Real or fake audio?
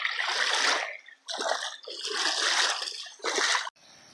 real